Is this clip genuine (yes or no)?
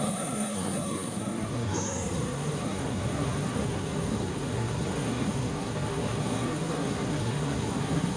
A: no